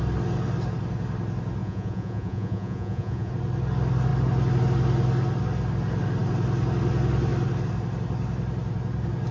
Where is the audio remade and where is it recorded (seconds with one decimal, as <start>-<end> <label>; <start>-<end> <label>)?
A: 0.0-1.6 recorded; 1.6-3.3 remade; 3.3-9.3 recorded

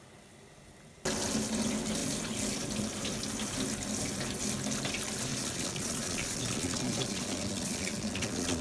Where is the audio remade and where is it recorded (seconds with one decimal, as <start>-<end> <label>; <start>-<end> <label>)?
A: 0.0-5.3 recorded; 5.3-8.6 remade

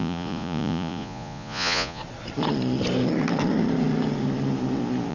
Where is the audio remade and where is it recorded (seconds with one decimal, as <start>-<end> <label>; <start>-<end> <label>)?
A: 0.0-2.0 remade; 2.0-5.1 recorded